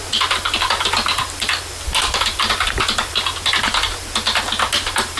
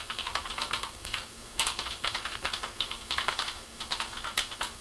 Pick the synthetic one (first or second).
second